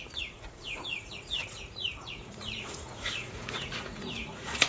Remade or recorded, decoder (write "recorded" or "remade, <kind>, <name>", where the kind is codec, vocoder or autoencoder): remade, vocoder, Vocos